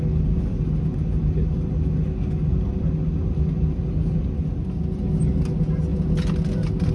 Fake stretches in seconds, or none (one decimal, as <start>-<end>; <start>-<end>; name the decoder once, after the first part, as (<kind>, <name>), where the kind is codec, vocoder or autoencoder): none